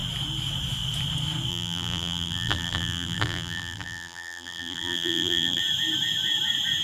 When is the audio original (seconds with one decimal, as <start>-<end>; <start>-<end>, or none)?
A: 0.0-1.5; 5.6-6.8